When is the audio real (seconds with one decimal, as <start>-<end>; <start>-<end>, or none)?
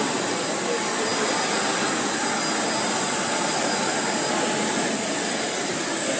0.0-6.2